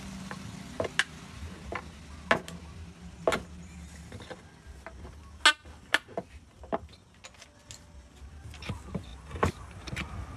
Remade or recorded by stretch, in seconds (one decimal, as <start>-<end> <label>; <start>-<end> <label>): 0.0-10.4 recorded